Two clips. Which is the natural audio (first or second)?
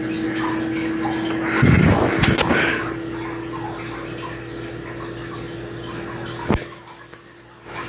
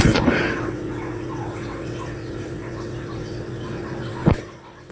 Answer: first